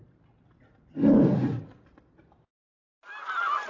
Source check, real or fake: real